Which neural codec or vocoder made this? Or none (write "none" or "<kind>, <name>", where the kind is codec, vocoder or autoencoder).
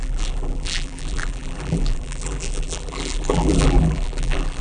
vocoder, BigVGAN v2